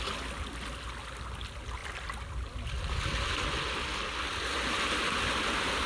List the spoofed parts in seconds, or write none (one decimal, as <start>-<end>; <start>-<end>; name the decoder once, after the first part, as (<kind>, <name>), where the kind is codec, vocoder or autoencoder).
none

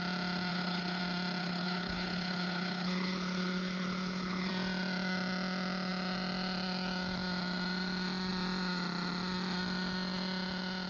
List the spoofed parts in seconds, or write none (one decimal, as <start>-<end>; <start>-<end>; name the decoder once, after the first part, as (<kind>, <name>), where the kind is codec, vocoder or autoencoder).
0.5-1.0 (codec, HILCodec); 1.4-4.5

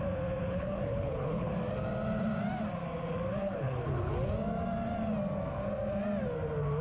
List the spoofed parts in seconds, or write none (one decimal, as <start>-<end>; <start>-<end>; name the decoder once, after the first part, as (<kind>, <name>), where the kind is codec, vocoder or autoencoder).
0.4-1.5 (codec, HILCodec); 3.4-4.1